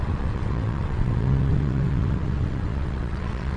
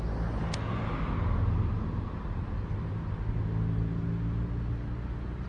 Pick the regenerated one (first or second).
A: first